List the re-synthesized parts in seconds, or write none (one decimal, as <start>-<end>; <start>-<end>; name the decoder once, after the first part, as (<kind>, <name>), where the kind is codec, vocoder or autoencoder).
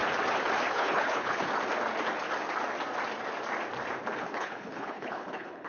0.7-1.5 (codec, HILCodec); 4.2-5.7